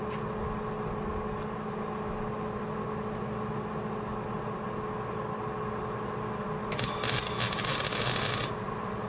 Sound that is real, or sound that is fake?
real